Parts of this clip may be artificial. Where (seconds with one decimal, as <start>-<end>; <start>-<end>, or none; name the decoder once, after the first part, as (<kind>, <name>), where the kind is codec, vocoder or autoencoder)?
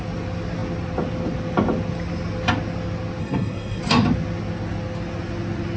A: 3.2-3.8 (codec, SNAC)